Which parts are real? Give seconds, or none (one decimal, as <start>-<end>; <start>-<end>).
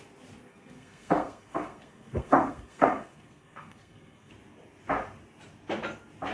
0.0-0.5; 4.3-6.3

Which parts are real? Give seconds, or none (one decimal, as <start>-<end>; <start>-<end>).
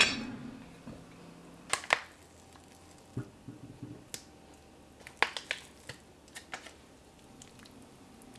0.0-8.4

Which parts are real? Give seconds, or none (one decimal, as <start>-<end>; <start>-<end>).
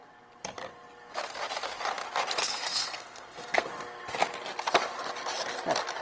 0.0-2.4; 3.7-6.0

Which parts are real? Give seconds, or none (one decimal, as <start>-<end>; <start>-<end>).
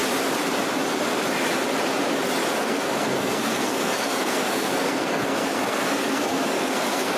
0.0-2.6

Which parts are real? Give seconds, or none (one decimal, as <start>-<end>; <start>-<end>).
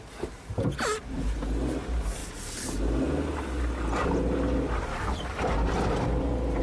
0.0-6.6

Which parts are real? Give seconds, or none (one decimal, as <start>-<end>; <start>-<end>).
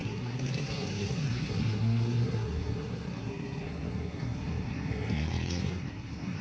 none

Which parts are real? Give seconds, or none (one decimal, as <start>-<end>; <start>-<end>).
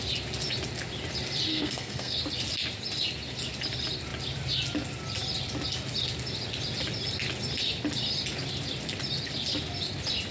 0.0-1.5; 2.2-10.3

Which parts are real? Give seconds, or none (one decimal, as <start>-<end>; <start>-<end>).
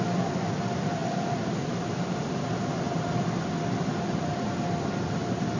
0.0-5.6